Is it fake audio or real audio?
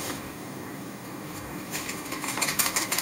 fake